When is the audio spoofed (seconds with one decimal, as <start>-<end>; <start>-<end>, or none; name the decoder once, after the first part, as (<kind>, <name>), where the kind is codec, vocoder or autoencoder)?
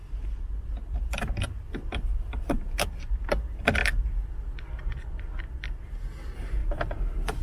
0.0-1.7 (vocoder, BigVGAN v2); 6.6-7.4